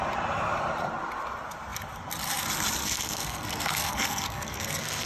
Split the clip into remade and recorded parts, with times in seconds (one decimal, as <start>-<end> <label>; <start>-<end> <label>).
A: 0.0-2.8 recorded; 2.8-5.1 remade